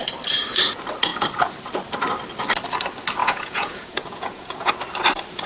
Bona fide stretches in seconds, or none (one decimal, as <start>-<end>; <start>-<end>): 0.0-3.2; 4.7-5.5